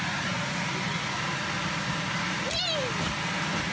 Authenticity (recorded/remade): recorded